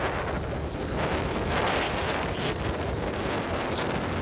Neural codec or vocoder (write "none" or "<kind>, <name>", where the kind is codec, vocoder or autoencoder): none